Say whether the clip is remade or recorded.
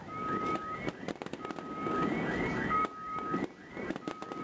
recorded